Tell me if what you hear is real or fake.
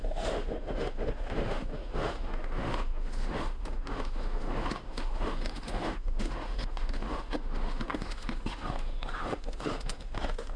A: fake